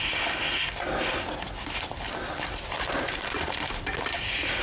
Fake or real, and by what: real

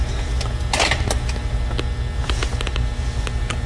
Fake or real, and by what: real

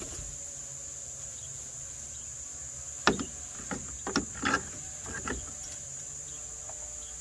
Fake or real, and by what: real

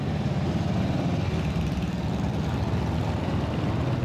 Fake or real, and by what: real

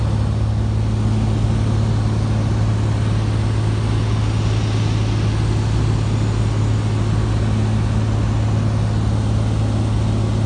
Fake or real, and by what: real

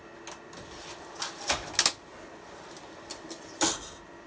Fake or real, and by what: real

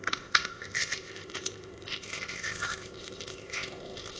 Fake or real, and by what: fake, codec, ZipCodec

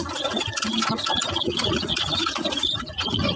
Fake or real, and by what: fake, vocoder, Vocos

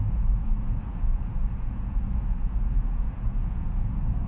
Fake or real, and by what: fake, vocoder, Vocos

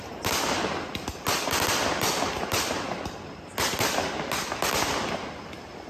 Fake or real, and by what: real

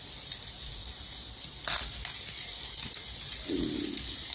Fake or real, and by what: real